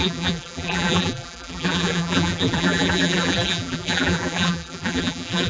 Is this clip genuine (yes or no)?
no